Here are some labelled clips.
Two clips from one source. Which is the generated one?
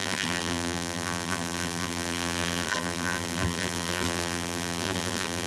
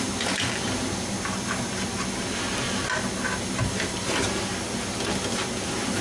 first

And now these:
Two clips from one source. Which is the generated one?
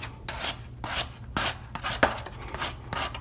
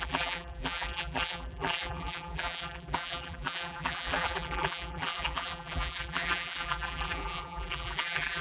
second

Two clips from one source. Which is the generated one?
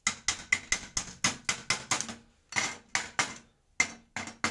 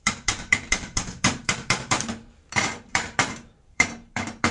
second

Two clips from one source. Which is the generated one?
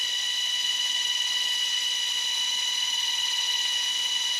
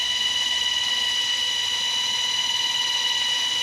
first